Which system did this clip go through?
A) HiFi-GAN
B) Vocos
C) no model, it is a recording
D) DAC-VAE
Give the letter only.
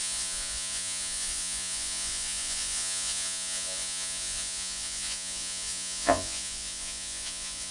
B